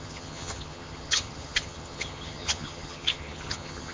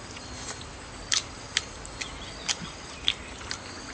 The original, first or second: second